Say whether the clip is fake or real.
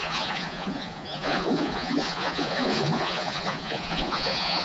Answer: fake